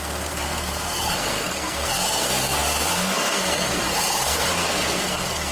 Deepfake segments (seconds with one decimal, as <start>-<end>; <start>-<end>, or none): 0.0-5.5